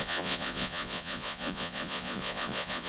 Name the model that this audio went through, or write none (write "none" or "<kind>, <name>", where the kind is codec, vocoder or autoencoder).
vocoder, Vocos